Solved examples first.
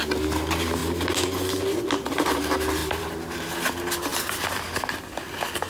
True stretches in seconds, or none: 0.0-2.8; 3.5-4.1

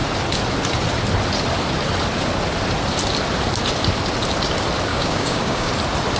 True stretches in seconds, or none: 0.0-4.9; 5.7-6.2

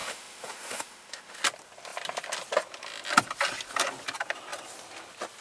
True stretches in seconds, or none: 1.4-5.4